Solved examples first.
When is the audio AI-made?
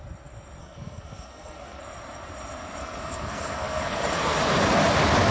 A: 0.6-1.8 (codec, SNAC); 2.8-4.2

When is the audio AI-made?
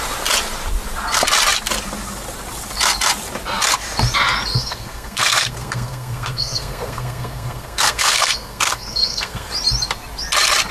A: 4.5-9.5 (codec, SNAC)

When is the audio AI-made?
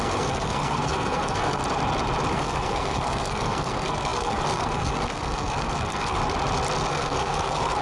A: 0.0-1.6 (codec, SNAC); 2.3-6.2; 6.9-7.8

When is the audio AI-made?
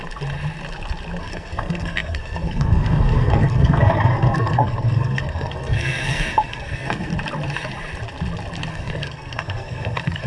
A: 1.2-7.1 (codec, SNAC); 8.7-10.3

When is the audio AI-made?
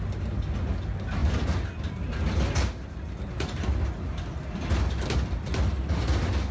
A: none